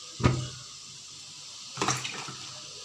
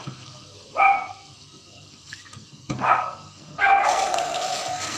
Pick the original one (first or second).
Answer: first